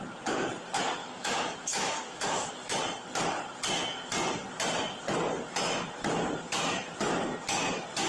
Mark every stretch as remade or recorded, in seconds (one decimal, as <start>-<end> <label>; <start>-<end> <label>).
0.0-1.0 recorded; 1.0-2.8 remade; 2.8-8.1 recorded